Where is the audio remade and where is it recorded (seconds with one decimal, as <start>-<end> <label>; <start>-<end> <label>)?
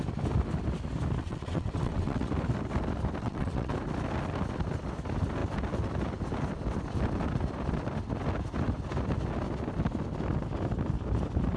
0.0-1.2 recorded; 1.2-2.3 remade; 2.3-3.2 recorded; 3.2-3.7 remade; 3.7-11.6 recorded